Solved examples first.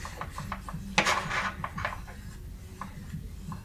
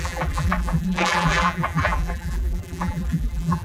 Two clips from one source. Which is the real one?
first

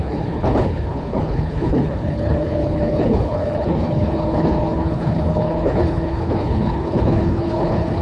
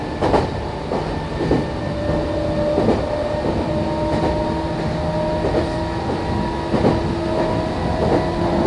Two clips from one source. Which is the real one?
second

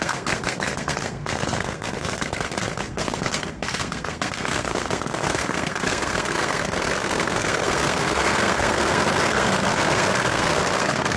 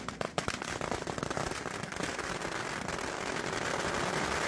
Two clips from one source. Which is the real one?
second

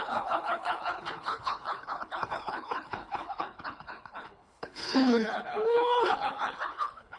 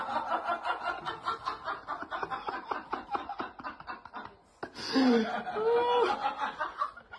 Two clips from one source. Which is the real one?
second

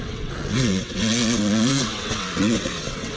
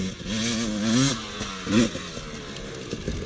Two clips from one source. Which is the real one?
second